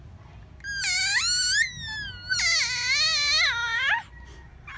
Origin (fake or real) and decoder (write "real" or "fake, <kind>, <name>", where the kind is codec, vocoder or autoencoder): real